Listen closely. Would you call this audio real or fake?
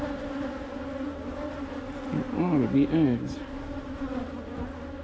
real